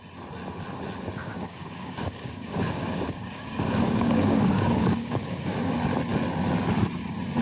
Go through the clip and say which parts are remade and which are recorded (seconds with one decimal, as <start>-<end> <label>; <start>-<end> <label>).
0.0-1.2 recorded; 1.2-5.6 remade; 5.6-7.4 recorded